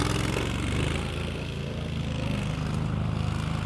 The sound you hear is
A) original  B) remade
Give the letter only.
A